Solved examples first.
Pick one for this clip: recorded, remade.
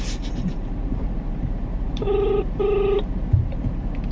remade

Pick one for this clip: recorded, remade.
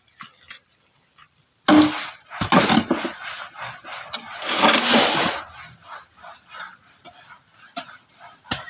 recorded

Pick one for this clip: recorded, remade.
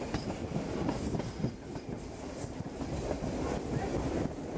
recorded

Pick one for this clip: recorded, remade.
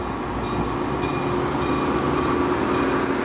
recorded